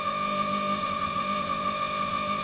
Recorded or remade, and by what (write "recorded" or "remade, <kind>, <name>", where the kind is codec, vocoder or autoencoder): remade, codec, ZipCodec